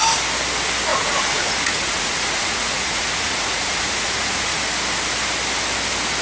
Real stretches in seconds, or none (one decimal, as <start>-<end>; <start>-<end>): 0.0-0.9; 4.6-6.2